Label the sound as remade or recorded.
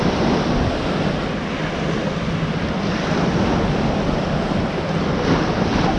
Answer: recorded